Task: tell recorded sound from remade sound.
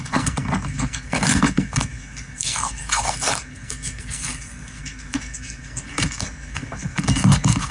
remade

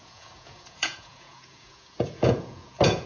remade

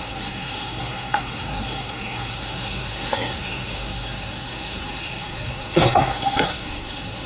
remade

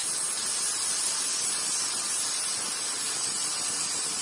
recorded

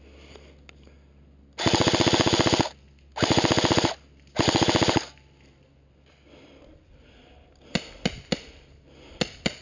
recorded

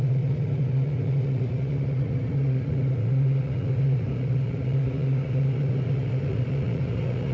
remade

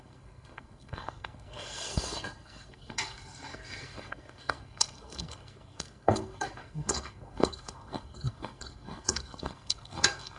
remade